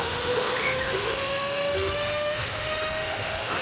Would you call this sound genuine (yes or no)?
no